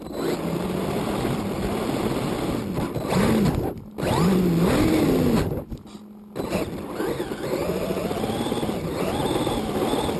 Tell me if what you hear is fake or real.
real